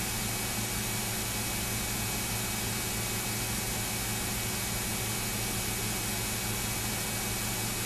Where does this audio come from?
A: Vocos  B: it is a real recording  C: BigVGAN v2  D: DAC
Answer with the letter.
B